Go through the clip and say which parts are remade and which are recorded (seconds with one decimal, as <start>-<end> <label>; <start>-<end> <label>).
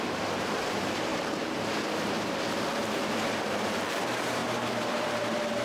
0.0-5.6 remade